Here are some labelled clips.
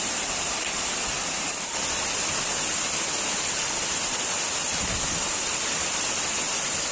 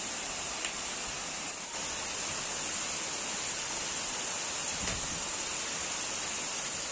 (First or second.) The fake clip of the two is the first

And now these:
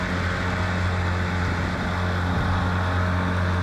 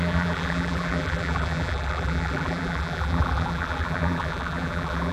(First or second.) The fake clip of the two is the second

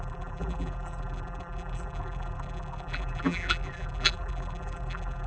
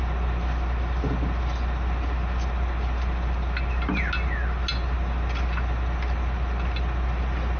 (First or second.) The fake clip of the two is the first